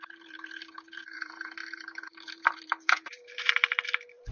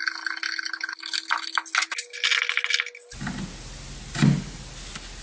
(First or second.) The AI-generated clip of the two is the first